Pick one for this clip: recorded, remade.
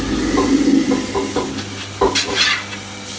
recorded